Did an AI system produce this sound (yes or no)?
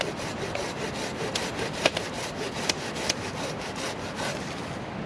yes